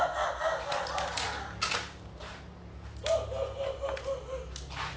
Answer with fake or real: real